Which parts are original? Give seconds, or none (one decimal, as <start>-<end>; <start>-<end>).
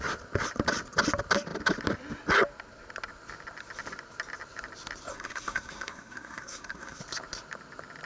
0.0-5.1; 7.0-8.1